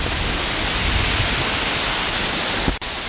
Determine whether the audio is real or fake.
real